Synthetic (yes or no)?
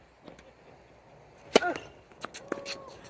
no